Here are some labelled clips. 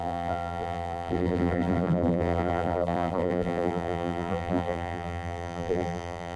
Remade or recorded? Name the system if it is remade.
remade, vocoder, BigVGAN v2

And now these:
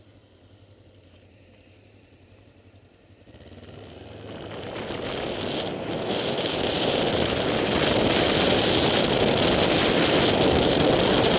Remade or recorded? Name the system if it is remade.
recorded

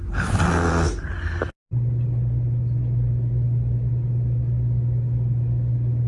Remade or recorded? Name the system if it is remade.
recorded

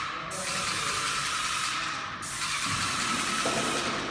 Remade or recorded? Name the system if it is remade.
recorded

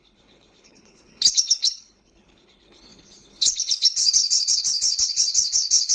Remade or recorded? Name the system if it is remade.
remade, codec, HILCodec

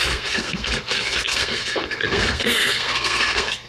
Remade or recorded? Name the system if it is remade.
remade, codec, SNAC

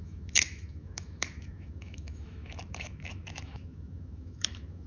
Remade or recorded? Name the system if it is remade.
remade, autoencoder, DAC-VAE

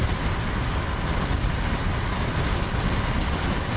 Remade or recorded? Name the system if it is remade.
recorded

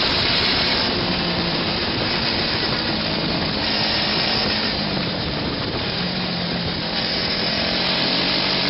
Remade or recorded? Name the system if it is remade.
remade, vocoder, BigVGAN v2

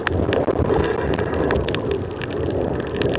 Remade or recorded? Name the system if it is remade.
recorded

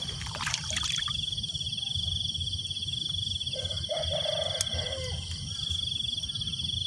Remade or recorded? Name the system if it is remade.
recorded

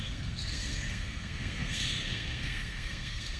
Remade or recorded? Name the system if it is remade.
remade, codec, SNAC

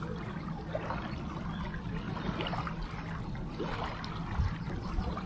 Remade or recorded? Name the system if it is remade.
recorded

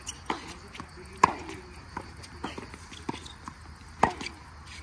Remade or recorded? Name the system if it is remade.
recorded